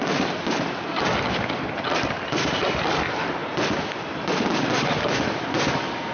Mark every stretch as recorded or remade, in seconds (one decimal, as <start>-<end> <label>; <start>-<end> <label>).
0.0-6.1 recorded